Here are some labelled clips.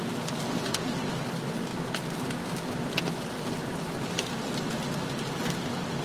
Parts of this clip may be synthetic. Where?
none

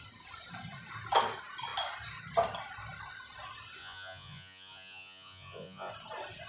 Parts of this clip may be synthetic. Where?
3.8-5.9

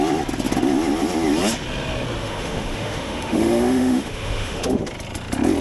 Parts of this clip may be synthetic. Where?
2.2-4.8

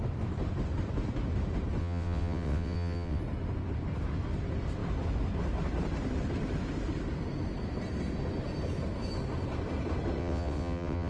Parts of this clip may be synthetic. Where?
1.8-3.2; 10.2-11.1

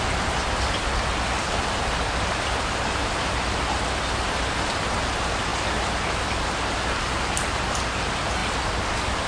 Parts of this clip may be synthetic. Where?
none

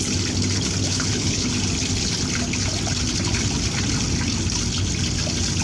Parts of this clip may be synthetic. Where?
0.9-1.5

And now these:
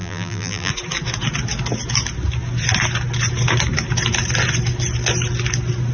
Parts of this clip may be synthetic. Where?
0.0-0.7